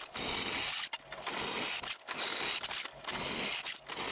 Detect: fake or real real